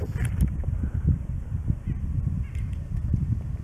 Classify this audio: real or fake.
real